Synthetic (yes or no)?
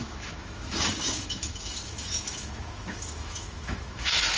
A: yes